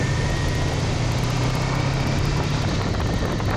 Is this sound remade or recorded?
recorded